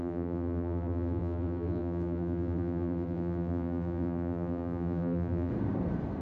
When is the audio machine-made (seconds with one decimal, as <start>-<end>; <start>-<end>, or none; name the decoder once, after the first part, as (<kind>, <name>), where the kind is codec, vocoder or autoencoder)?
0.0-5.5 (vocoder, BigVGAN v2)